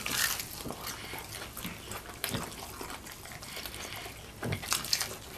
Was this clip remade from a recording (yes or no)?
no